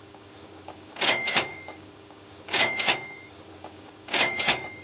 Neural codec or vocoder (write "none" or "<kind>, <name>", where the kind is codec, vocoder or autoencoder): codec, DAC